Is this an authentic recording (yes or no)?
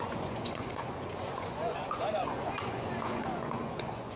no